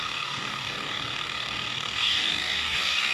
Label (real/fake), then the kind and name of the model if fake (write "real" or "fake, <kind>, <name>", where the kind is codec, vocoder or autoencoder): fake, codec, DAC